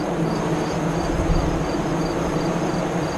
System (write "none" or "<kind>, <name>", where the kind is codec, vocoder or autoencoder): vocoder, BigVGAN v2